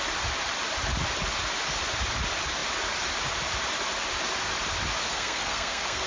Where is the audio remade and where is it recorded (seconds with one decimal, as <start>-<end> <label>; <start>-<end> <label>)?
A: 0.0-5.0 recorded; 5.0-6.1 remade